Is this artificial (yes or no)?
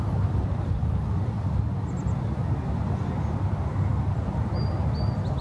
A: yes